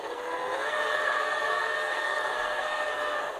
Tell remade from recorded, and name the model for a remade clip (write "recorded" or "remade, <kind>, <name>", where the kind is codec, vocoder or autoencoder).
remade, codec, SNAC